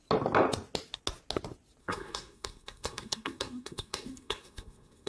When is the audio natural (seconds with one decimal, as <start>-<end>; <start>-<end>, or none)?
0.0-1.8